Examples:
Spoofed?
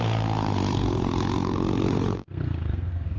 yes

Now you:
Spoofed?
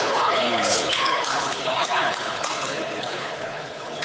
yes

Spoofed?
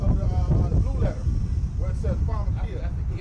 no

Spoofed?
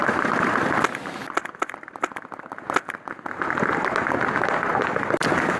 no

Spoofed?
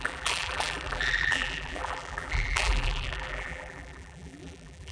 yes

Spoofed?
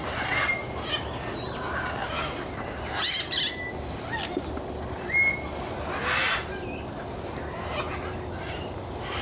no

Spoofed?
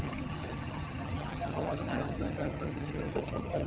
yes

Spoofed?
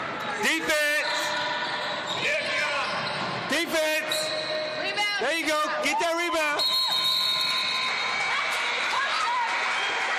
no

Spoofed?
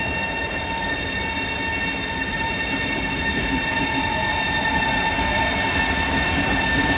no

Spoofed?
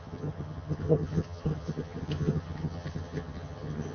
yes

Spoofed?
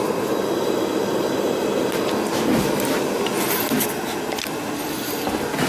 no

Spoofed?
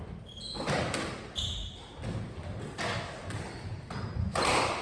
no